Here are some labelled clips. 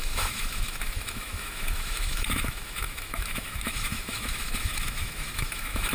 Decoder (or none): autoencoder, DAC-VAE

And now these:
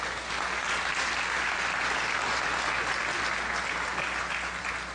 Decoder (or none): none